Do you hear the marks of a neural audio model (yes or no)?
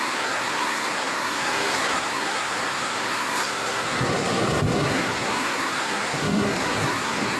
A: yes